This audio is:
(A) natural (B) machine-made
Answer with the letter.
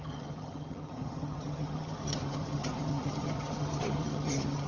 B